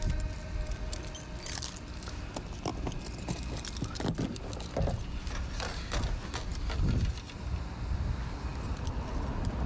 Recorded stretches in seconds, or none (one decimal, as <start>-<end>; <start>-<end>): 0.0-9.7